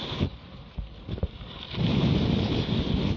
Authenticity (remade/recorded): recorded